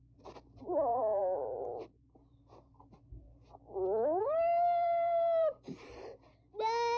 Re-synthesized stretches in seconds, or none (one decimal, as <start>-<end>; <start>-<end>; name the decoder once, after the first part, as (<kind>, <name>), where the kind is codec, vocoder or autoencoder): 0.9-3.0 (vocoder, BigVGAN v2); 4.2-6.3